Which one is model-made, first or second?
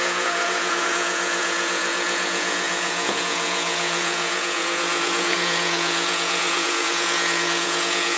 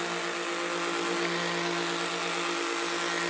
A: first